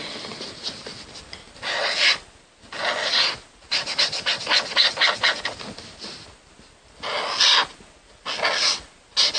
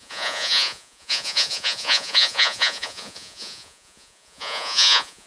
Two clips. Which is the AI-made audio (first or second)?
second